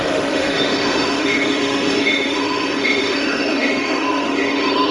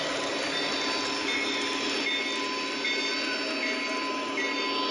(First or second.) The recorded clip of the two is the second